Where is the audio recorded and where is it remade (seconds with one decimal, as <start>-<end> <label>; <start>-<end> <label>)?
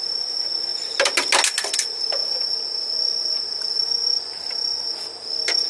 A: 0.0-5.7 recorded